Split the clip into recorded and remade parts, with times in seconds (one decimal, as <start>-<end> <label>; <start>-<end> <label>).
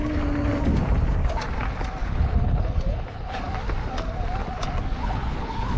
0.0-2.0 recorded; 2.0-3.4 remade; 3.4-5.0 recorded; 5.0-5.8 remade